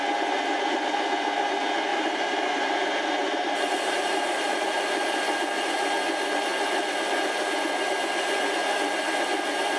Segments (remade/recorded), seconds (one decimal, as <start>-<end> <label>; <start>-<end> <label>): 0.0-1.9 recorded; 1.9-2.7 remade; 2.7-3.2 recorded; 3.2-5.0 remade; 5.0-9.8 recorded